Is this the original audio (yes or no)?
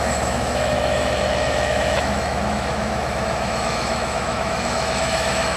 no